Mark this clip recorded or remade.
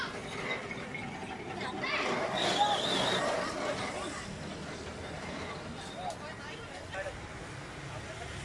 recorded